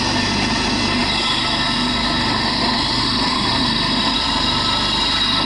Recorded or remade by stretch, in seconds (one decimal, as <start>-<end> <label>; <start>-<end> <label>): 0.0-5.5 recorded